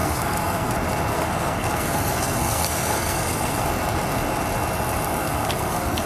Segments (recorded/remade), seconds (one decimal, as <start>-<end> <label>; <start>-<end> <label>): 0.0-0.7 remade; 0.7-1.1 recorded; 1.1-3.7 remade; 3.7-5.2 recorded; 5.2-6.1 remade